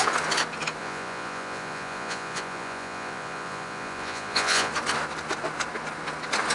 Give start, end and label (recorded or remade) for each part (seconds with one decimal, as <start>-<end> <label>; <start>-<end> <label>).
0.0-0.8 recorded; 0.8-4.7 remade; 4.7-6.5 recorded